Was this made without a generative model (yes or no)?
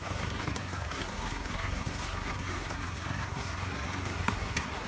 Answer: no